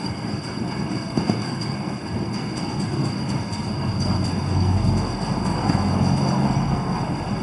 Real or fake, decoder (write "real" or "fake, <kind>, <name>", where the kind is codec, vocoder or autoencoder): fake, codec, SNAC